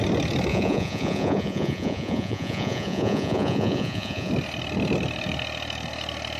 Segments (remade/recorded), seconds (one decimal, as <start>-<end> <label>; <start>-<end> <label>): 0.0-0.5 recorded; 0.5-4.3 remade; 4.3-6.4 recorded